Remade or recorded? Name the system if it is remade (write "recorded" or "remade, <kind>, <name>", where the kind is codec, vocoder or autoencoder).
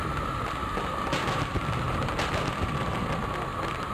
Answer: recorded